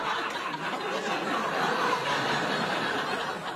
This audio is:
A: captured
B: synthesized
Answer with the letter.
A